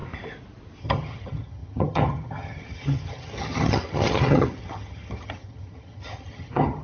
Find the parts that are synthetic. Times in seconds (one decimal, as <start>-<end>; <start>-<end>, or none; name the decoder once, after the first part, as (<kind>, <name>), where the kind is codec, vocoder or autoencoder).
0.8-6.8 (vocoder, HiFi-GAN)